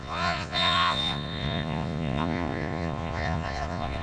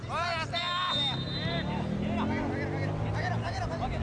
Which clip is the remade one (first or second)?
first